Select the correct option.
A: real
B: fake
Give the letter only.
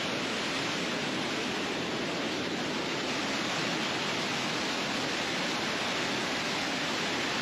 A